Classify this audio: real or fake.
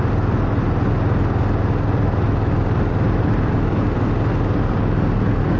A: real